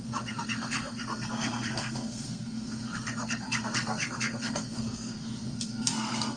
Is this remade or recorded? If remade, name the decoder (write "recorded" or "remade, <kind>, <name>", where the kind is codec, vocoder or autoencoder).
remade, codec, SNAC